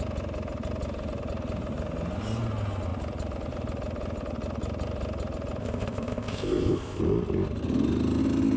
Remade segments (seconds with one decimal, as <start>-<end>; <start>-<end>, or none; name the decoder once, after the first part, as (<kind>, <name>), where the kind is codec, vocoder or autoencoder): 5.6-7.0 (codec, ZipCodec)